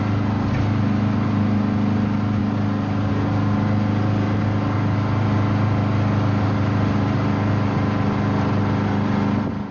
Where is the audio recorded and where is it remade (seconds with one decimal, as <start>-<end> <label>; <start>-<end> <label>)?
0.0-9.7 recorded